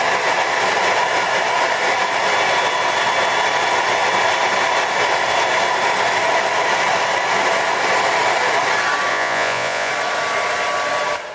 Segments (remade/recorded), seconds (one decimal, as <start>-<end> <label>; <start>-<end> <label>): 0.0-9.1 recorded; 9.1-9.9 remade; 9.9-11.3 recorded